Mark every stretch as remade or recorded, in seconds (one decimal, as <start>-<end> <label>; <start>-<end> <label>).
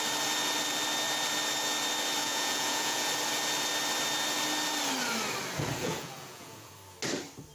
0.0-2.2 recorded; 2.2-3.1 remade; 3.1-5.8 recorded; 5.8-6.7 remade; 6.7-7.5 recorded